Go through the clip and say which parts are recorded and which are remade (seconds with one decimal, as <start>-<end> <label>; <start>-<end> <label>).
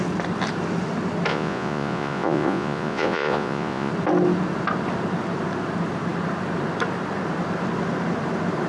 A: 0.0-1.3 recorded; 1.3-3.9 remade; 3.9-8.7 recorded